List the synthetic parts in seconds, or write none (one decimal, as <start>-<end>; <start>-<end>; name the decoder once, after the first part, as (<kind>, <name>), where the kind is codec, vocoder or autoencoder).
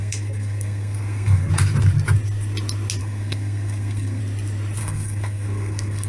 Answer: 0.0-1.5 (codec, SNAC); 3.0-4.2; 4.8-6.1